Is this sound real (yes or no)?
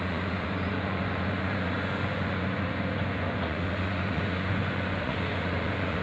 no